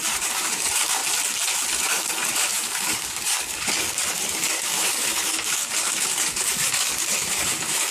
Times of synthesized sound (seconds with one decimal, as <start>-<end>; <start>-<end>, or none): 0.0-1.0; 1.7-7.9